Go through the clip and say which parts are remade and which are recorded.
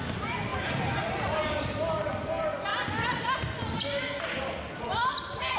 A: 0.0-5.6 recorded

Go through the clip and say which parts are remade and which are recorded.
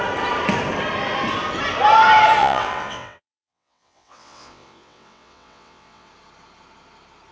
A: 0.0-2.4 recorded; 2.4-6.1 remade; 6.1-7.3 recorded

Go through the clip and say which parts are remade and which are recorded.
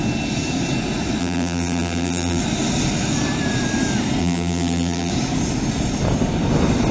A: 0.0-1.2 recorded; 1.2-2.4 remade; 2.4-4.2 recorded; 4.2-5.1 remade; 5.1-6.9 recorded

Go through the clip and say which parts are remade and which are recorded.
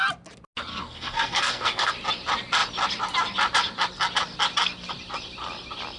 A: 0.0-0.7 recorded; 0.7-1.9 remade; 1.9-6.0 recorded